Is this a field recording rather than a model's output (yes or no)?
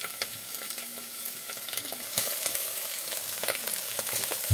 no